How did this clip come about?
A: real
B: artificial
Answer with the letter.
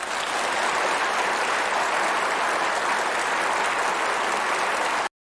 A